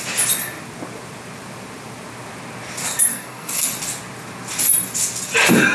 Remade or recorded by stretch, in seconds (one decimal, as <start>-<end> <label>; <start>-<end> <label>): 0.0-3.1 recorded; 3.1-3.7 remade; 3.7-5.7 recorded